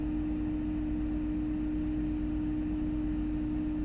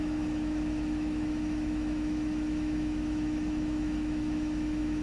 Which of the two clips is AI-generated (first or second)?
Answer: second